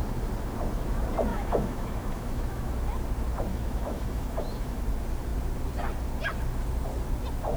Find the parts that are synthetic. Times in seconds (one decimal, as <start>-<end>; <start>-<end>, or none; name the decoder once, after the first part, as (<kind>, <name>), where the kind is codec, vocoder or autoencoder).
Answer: 1.3-2.7 (autoencoder, DAC-VAE); 3.5-4.8